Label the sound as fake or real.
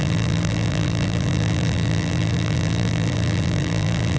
fake